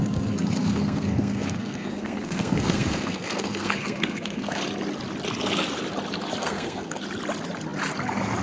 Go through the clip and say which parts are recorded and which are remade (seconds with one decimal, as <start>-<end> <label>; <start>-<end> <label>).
0.0-4.6 remade; 4.6-6.4 recorded; 6.4-7.0 remade; 7.0-8.4 recorded